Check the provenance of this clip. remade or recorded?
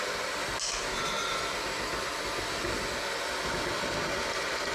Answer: recorded